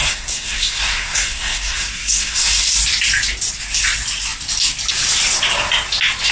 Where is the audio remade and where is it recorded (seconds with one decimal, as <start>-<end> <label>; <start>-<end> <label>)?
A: 0.0-2.7 remade; 2.7-6.3 recorded